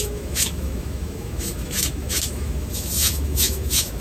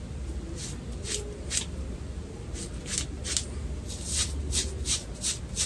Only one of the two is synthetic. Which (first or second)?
first